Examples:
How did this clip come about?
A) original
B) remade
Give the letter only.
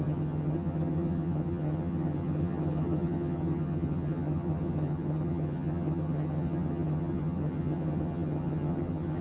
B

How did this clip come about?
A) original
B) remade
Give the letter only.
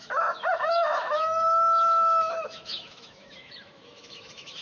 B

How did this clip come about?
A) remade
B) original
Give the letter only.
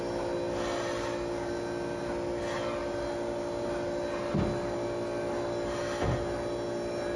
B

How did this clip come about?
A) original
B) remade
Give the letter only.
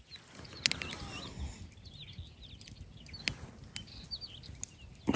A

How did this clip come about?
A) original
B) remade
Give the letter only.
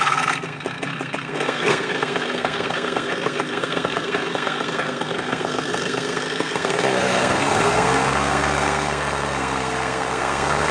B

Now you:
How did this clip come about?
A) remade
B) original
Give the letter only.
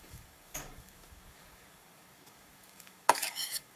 A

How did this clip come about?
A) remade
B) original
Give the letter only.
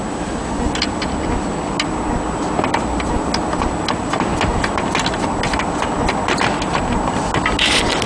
B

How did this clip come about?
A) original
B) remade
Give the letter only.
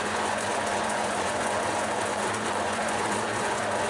B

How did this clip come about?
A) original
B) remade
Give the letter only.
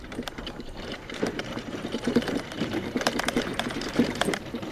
B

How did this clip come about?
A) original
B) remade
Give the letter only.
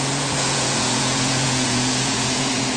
B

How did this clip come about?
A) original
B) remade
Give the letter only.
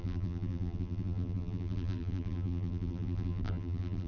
B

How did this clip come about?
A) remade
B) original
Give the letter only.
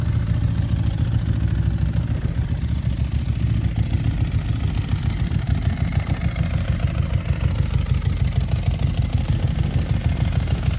B